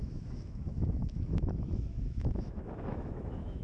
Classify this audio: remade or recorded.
remade